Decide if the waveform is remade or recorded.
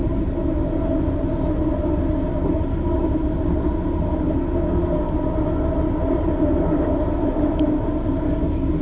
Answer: recorded